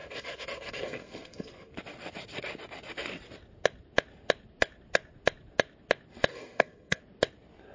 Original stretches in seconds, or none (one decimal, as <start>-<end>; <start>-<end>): 1.7-6.3; 7.0-7.7